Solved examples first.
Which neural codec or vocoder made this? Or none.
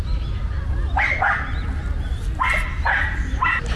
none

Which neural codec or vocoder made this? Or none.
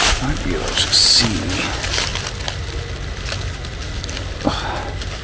none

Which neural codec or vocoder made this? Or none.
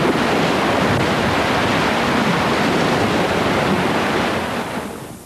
none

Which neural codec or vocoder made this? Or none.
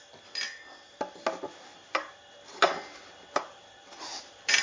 none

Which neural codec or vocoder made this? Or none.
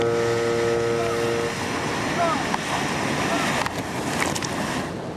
none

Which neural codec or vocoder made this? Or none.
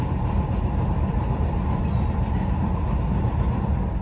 none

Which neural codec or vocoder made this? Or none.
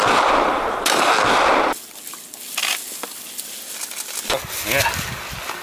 none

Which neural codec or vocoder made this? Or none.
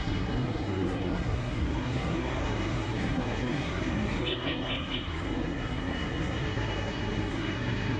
codec, SNAC